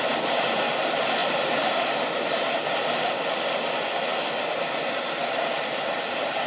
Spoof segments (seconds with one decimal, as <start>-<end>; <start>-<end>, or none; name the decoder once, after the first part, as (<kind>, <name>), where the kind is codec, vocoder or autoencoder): 1.2-2.8 (vocoder, BigVGAN v2); 4.1-4.8